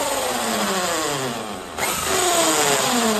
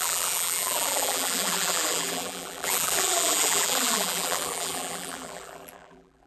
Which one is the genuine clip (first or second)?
first